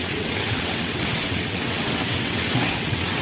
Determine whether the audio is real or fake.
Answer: fake